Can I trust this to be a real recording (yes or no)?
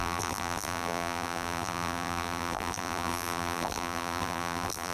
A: no